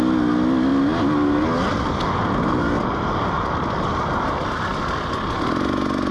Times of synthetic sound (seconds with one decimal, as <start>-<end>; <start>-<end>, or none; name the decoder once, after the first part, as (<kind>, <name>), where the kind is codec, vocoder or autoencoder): none